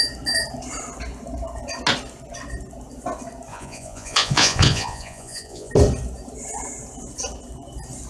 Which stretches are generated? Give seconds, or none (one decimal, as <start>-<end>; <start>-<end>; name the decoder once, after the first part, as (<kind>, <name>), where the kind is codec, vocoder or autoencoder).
3.5-5.7 (vocoder, Vocos)